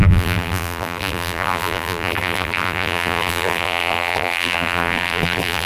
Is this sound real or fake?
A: fake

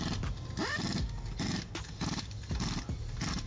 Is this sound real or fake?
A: real